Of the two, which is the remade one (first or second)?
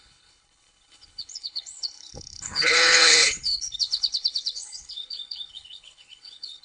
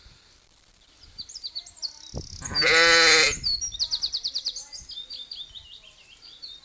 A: first